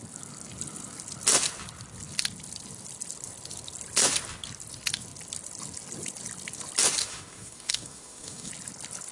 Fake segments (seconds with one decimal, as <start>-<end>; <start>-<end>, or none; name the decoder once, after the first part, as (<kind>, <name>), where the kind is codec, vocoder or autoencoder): 7.0-8.5 (autoencoder, DAC-VAE)